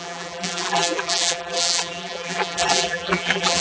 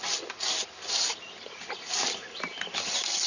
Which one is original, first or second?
second